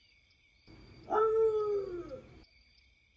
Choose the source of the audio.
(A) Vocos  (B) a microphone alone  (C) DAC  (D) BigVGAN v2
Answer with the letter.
B